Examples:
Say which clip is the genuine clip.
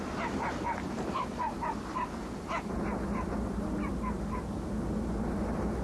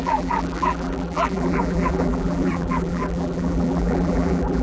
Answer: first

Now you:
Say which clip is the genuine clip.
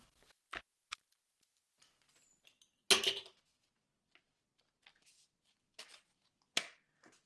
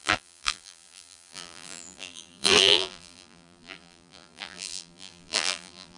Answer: first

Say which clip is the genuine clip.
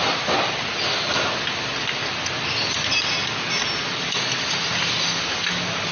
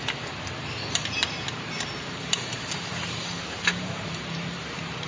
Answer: first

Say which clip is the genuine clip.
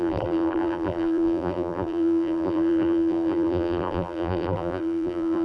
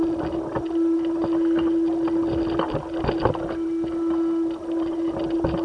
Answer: second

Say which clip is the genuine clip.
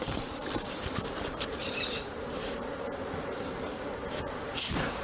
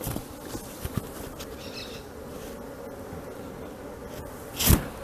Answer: second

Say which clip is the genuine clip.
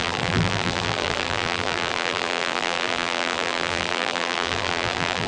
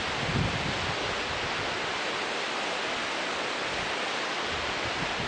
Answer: second